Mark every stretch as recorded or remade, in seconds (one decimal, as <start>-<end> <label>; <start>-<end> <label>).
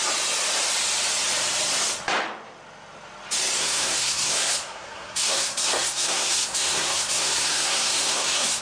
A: 0.0-3.6 recorded; 3.6-8.6 remade